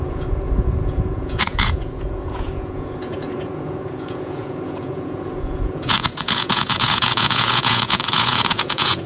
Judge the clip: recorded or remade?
remade